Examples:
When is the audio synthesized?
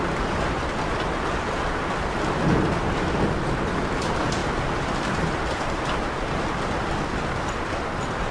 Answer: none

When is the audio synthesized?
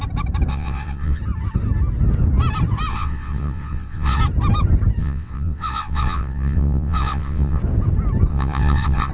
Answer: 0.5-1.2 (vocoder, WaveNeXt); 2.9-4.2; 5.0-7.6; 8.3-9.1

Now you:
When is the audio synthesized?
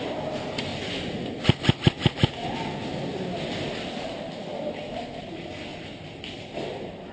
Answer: 0.7-1.6 (vocoder, BigVGAN v2); 5.7-6.4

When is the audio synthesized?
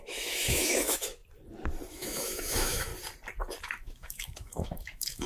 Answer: 0.0-1.2 (autoencoder, DAC-VAE); 1.9-2.9; 3.6-5.3